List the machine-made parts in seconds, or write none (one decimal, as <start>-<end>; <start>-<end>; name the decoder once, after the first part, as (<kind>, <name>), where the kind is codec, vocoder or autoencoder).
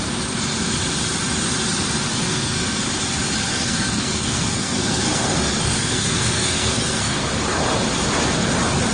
2.1-2.8 (codec, SNAC); 3.5-7.3